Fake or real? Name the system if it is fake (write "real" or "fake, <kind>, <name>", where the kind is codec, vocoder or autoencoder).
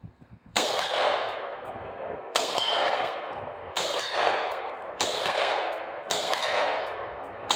fake, codec, SNAC